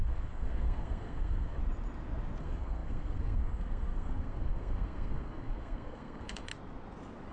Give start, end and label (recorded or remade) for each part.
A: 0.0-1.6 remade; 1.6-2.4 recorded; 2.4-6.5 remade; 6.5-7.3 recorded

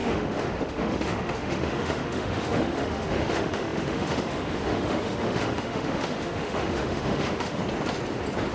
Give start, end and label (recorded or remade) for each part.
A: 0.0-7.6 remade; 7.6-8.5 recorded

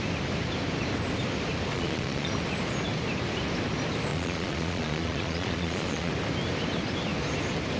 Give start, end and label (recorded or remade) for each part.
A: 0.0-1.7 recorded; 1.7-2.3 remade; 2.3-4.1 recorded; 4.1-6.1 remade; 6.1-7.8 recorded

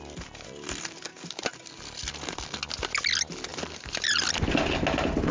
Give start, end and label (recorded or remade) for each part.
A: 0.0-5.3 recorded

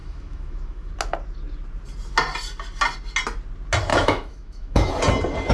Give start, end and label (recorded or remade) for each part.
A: 0.0-0.9 remade; 0.9-3.9 recorded; 3.9-4.9 remade; 4.9-5.5 recorded

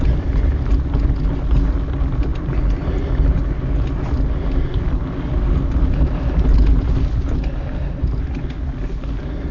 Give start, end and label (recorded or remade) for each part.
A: 0.0-9.5 recorded